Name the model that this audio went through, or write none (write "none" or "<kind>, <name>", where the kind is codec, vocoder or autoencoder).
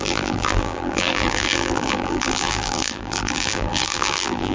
vocoder, BigVGAN v2